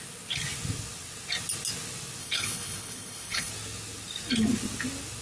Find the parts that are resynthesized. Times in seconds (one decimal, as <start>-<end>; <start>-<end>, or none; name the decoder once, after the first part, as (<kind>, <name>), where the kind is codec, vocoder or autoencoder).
2.2-3.5 (codec, HILCodec)